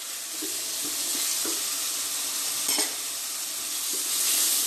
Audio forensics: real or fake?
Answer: real